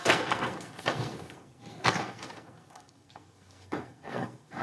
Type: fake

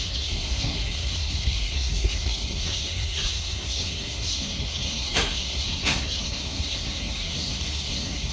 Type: fake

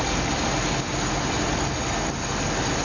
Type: real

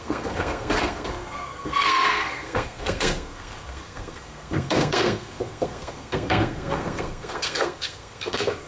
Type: fake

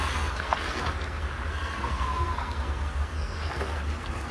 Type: fake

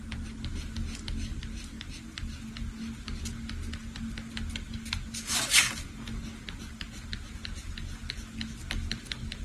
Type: real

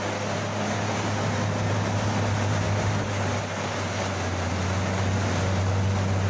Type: real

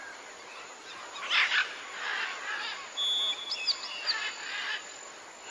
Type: real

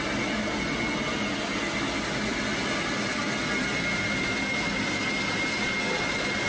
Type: real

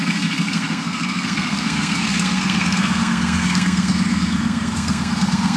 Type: fake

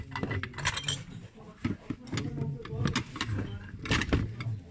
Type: real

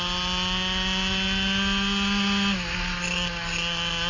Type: real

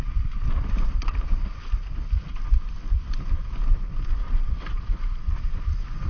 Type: real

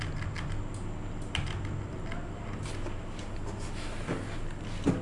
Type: real